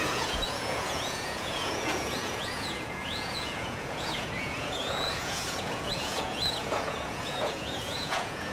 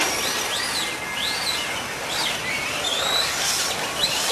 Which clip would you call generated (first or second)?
first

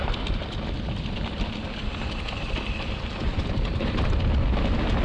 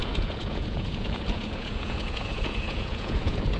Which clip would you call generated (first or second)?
second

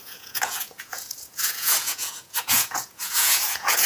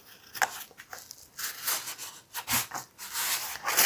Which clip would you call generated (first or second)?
first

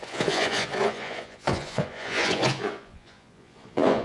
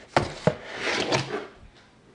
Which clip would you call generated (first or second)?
first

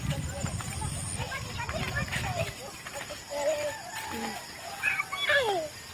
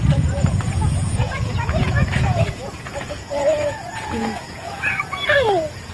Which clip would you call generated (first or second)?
second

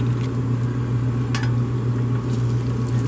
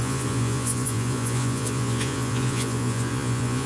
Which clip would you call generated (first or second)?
second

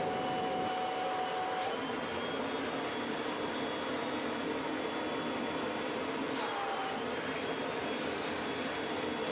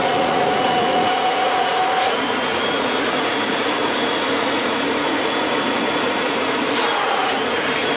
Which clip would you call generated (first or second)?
second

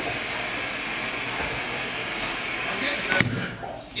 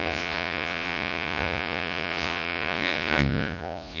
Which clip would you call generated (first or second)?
second